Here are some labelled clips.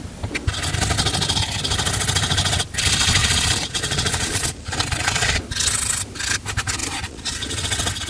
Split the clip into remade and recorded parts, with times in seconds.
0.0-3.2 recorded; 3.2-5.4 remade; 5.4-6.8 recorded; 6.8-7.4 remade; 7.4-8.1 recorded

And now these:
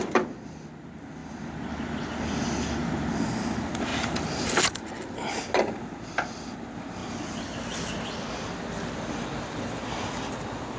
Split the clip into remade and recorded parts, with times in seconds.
0.0-10.8 recorded

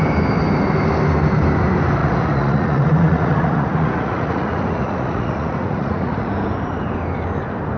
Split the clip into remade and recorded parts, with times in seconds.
0.0-2.0 recorded; 2.0-6.3 remade; 6.3-7.8 recorded

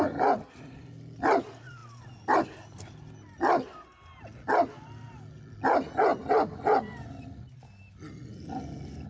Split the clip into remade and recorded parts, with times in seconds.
0.0-9.1 recorded

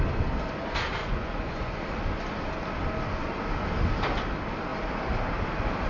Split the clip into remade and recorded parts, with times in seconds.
0.0-1.0 recorded; 1.0-1.8 remade; 1.8-5.9 recorded

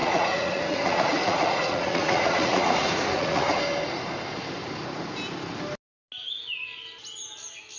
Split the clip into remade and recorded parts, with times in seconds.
0.0-3.6 remade; 3.6-7.8 recorded